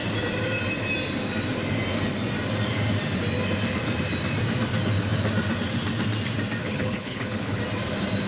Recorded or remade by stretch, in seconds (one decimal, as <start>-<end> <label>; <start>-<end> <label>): 0.0-6.6 recorded; 6.6-7.6 remade; 7.6-8.3 recorded